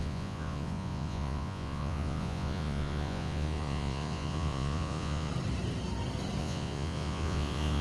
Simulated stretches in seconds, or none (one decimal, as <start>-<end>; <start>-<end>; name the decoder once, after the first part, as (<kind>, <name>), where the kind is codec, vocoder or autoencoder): 0.0-5.3 (vocoder, Vocos); 6.4-7.8